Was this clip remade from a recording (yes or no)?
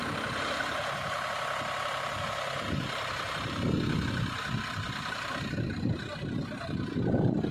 no